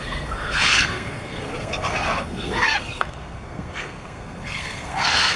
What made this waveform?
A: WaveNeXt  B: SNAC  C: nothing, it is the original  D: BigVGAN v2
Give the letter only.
B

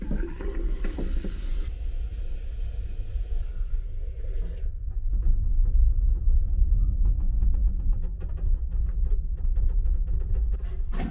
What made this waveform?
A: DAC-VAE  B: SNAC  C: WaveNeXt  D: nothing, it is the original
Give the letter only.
D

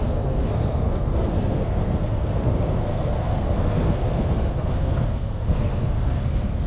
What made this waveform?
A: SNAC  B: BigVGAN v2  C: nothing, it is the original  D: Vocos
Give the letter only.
A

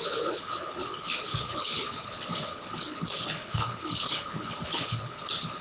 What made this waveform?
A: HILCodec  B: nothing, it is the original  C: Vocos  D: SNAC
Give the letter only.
A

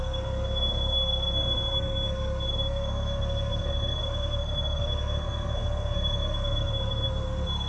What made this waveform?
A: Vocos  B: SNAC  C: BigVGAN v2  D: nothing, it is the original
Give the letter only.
B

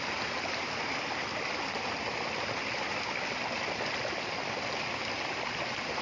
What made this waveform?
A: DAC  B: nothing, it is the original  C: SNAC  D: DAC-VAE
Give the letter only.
B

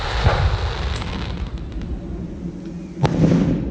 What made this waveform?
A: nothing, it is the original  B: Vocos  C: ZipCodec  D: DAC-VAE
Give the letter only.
A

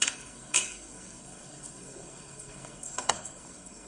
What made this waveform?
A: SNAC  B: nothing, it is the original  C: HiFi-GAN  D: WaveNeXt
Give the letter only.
A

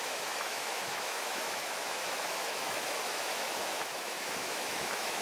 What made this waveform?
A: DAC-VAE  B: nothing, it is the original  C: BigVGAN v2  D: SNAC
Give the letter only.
A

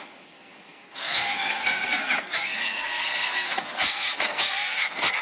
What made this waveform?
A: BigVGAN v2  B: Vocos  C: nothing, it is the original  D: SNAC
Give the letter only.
D